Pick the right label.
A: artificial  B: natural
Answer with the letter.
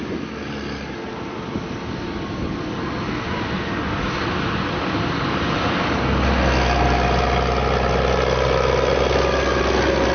B